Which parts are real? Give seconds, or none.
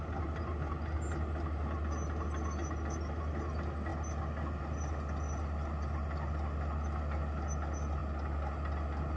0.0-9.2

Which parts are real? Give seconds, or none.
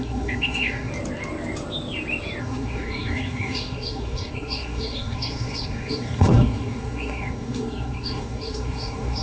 0.9-2.4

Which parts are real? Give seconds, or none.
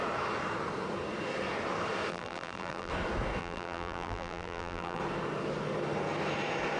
0.0-2.1; 2.9-3.4; 5.0-6.8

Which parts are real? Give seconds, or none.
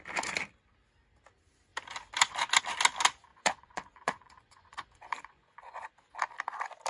0.0-3.3; 5.9-6.9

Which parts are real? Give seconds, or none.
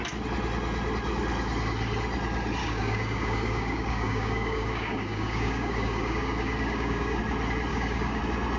0.0-2.6; 7.2-7.7; 8.2-8.6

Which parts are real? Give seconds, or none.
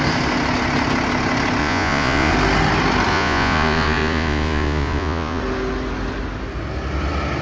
0.0-1.6; 2.3-3.1; 5.4-7.4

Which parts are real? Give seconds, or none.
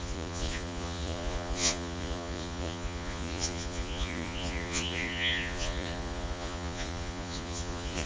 none